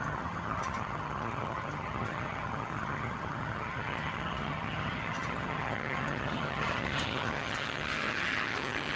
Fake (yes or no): yes